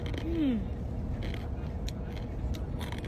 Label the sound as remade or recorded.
recorded